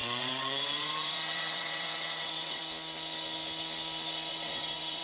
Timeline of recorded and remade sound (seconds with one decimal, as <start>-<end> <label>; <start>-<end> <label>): 0.0-2.6 remade; 2.6-4.3 recorded; 4.3-5.0 remade